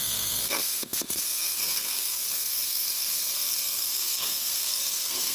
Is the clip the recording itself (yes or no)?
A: no